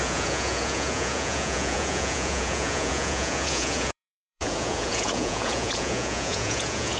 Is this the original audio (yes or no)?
no